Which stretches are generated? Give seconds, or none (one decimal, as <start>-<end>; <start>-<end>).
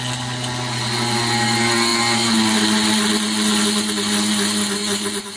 none